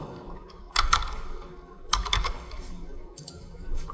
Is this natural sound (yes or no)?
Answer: no